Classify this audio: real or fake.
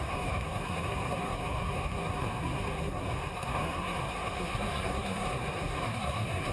fake